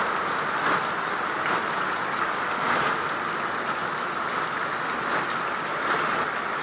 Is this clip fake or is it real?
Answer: real